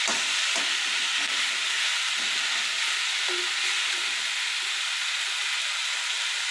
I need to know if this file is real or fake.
real